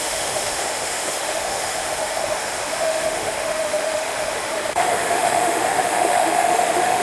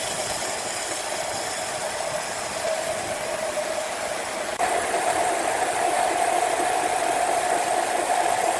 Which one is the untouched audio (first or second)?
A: second